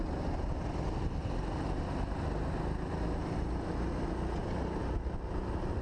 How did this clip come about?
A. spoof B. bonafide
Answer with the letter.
B